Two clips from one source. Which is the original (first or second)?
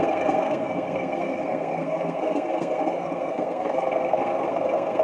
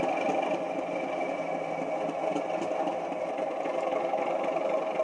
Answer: second